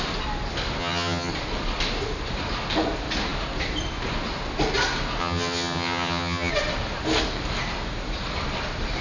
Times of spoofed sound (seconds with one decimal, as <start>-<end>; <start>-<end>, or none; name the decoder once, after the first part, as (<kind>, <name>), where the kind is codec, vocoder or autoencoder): 0.8-1.3 (vocoder, HiFi-GAN); 5.2-6.5